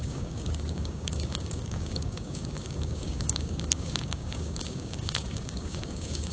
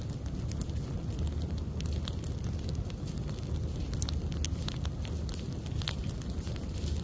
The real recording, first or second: second